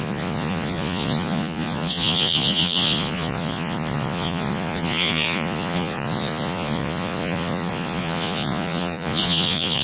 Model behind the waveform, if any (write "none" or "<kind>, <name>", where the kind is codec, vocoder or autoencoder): vocoder, Vocos